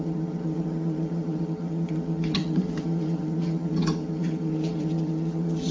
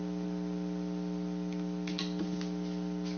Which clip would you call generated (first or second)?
first